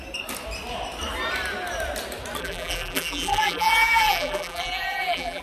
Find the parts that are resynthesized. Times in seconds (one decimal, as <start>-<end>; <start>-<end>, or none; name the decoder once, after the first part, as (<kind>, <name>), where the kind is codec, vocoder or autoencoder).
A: 2.4-5.4 (vocoder, BigVGAN v2)